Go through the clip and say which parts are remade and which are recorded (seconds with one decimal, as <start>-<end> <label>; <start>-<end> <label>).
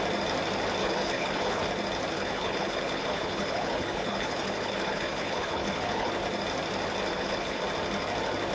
0.0-0.8 recorded; 0.8-1.6 remade; 1.6-2.1 recorded; 2.1-6.1 remade; 6.1-7.1 recorded; 7.1-7.6 remade; 7.6-8.5 recorded